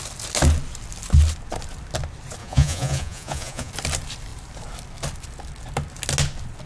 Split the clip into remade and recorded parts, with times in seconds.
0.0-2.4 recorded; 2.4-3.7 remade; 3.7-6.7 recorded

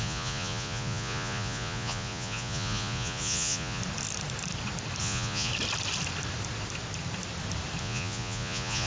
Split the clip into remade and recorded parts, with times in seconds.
0.0-3.8 remade; 3.8-5.0 recorded; 5.0-5.5 remade; 5.5-7.8 recorded; 7.8-8.9 remade